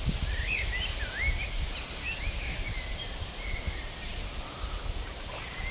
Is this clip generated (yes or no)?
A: no